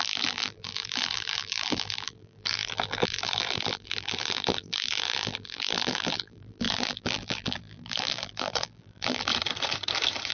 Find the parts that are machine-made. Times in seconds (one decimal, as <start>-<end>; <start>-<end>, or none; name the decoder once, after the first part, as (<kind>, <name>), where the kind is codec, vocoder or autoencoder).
0.0-9.3 (vocoder, BigVGAN v2)